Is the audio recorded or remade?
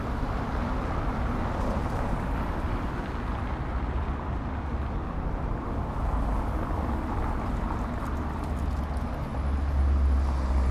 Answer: recorded